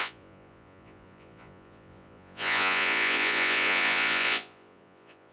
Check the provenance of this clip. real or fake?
fake